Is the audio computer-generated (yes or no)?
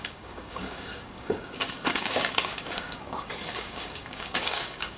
yes